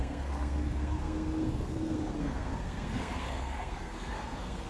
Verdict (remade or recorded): remade